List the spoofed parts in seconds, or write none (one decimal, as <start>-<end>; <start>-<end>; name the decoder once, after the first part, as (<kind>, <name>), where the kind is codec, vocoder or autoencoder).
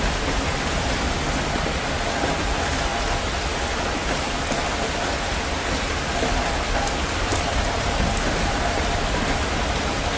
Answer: none